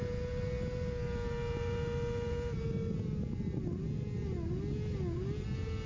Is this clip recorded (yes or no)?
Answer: yes